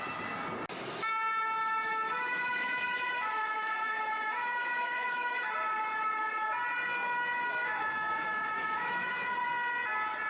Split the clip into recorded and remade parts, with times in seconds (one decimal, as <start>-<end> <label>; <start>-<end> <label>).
0.0-1.9 recorded; 1.9-5.5 remade; 5.5-7.6 recorded; 7.6-9.1 remade; 9.1-10.3 recorded